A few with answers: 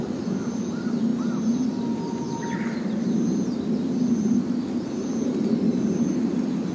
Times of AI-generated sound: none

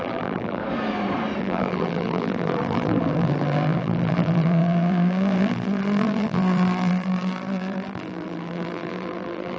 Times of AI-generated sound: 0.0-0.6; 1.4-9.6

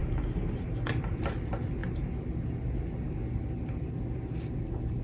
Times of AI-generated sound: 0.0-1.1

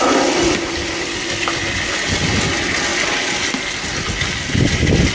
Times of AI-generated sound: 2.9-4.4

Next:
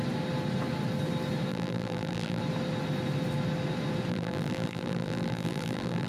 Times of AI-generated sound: 1.5-2.4; 4.1-6.1

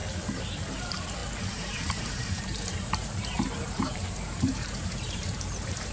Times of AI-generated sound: 0.7-5.9